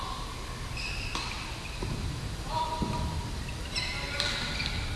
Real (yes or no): yes